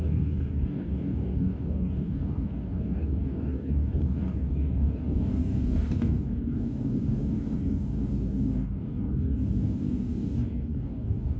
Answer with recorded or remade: remade